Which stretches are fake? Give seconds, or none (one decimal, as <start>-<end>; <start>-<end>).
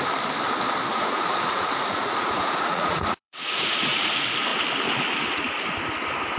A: 0.9-4.1